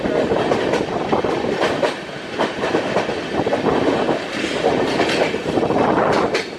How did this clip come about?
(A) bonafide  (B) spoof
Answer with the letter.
A